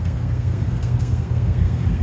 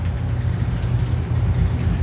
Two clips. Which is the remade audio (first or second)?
first